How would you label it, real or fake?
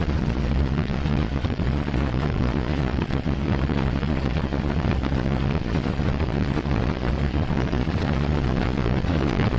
fake